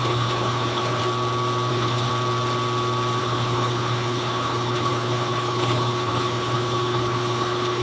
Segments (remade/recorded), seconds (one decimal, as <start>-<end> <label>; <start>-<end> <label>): 0.0-1.0 remade; 1.0-1.7 recorded; 1.7-2.1 remade; 2.1-3.2 recorded; 3.2-7.8 remade